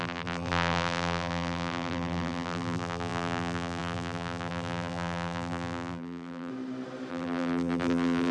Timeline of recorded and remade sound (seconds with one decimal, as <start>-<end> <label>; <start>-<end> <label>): 0.0-6.5 remade; 6.5-7.1 recorded; 7.1-8.3 remade